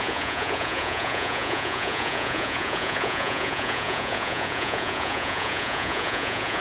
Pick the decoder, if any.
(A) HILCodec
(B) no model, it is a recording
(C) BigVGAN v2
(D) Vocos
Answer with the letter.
D